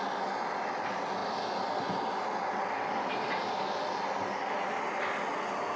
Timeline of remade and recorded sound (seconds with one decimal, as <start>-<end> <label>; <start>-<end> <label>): 0.0-5.8 recorded